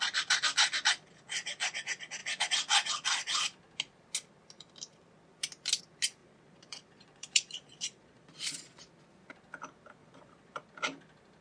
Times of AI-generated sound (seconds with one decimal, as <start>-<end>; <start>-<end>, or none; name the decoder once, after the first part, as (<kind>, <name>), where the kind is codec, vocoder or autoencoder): 6.2-8.9 (vocoder, Vocos); 10.0-10.6

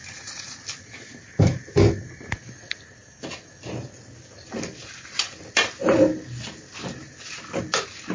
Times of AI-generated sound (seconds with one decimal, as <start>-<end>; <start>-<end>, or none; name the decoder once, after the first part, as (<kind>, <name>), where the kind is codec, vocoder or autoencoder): 0.0-0.6 (vocoder, Vocos)

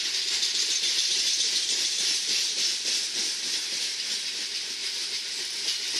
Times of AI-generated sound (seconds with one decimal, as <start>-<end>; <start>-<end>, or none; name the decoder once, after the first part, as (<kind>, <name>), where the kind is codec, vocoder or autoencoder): 4.8-5.6 (vocoder, BigVGAN v2)

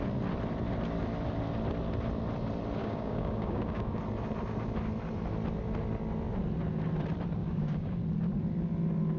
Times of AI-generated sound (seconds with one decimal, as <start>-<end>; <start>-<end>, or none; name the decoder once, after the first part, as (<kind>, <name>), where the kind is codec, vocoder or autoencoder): 2.8-4.0 (codec, DAC); 7.4-8.0